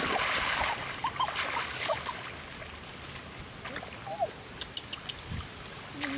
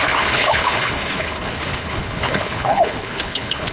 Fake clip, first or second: second